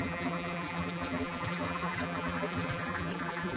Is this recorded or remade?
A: remade